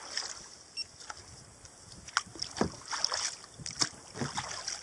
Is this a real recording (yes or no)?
yes